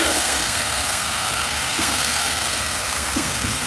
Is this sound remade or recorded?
remade